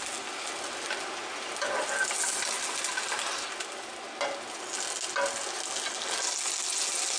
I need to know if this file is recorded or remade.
recorded